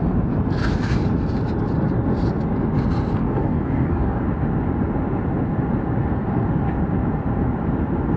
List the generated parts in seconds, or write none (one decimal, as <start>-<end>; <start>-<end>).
3.2-4.2